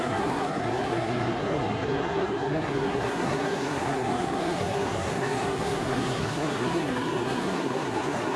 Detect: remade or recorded remade